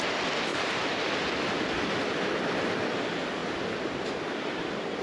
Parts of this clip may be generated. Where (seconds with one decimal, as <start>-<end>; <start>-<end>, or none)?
0.5-2.9; 3.4-4.0